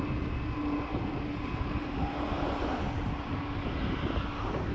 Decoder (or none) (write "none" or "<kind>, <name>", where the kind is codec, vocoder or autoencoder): none